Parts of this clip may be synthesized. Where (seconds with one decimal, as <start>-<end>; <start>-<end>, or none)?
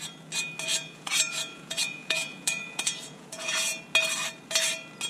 0.7-3.8